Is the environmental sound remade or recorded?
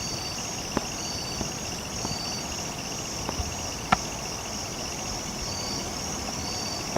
recorded